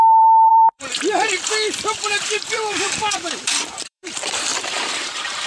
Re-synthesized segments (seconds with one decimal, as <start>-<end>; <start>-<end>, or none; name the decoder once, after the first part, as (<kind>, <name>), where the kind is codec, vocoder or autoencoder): 0.0-5.5 (vocoder, BigVGAN v2)